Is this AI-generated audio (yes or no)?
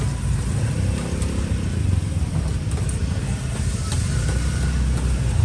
no